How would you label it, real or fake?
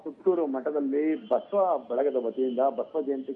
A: real